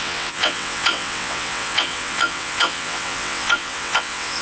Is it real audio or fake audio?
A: fake